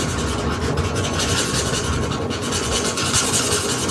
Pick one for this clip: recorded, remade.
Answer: remade